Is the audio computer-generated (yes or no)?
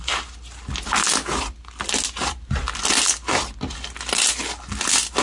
no